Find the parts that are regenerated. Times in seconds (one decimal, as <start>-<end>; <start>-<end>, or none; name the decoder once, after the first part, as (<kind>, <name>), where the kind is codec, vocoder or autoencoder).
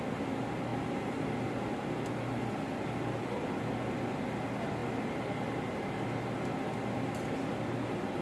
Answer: 0.7-1.3 (vocoder, BigVGAN v2)